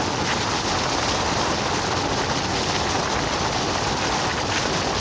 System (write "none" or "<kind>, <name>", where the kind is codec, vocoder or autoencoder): none